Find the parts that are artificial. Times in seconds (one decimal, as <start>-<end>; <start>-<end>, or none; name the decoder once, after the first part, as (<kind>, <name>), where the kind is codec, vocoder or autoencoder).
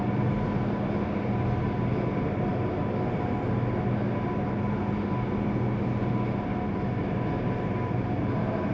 none